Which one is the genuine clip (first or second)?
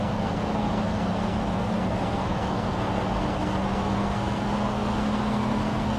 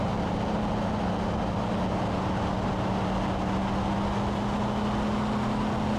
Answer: second